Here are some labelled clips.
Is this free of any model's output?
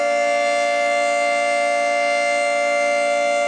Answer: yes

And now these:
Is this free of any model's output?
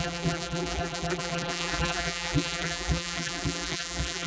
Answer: no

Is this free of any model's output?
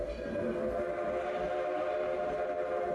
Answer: yes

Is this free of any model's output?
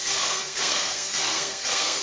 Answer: no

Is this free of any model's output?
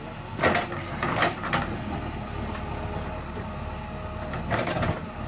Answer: yes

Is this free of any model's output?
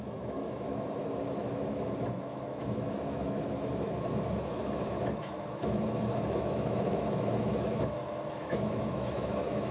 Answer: no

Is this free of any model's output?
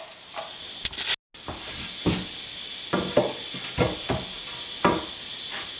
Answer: yes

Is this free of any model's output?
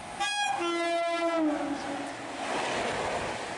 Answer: yes